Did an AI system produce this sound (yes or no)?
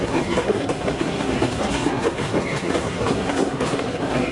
yes